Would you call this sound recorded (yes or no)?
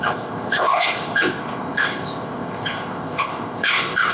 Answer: no